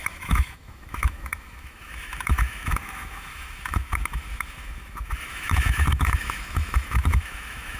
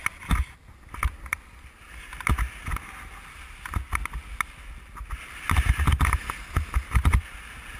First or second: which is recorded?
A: second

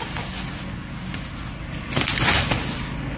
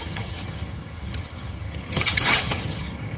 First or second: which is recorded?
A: first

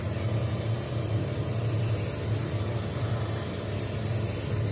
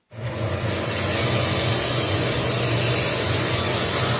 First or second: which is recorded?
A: first